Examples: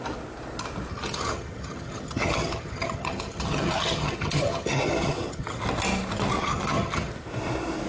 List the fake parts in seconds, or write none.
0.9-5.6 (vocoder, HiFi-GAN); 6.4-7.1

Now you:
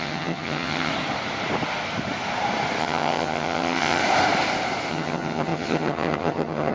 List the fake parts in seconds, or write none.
0.0-0.9 (vocoder, HiFi-GAN); 2.8-4.0; 4.9-6.7

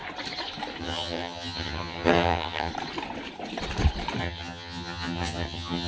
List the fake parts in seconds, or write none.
0.8-2.7 (vocoder, HiFi-GAN); 4.2-5.9

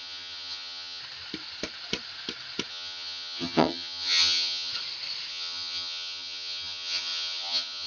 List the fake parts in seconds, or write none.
0.0-1.0 (vocoder, HiFi-GAN); 2.7-4.7; 5.3-7.9

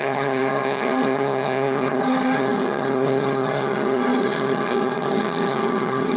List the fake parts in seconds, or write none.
0.0-6.2 (vocoder, HiFi-GAN)

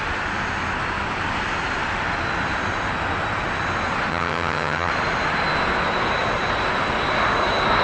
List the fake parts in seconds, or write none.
4.1-4.9 (vocoder, HiFi-GAN)

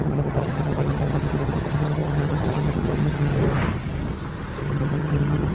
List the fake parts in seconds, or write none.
0.0-3.3 (vocoder, HiFi-GAN); 4.6-5.5

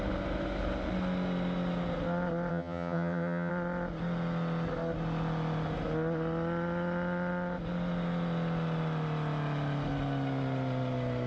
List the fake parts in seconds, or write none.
2.5-3.5 (vocoder, HiFi-GAN)